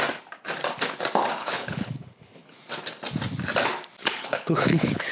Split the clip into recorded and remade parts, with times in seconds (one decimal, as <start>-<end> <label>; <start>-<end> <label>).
0.0-1.4 recorded; 1.4-2.6 remade; 2.6-4.0 recorded; 4.0-5.1 remade